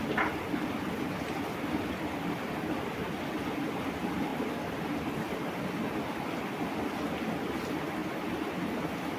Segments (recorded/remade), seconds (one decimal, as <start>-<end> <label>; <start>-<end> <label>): 0.0-9.2 recorded